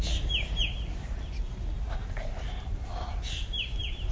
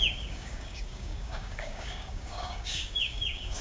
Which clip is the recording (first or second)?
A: first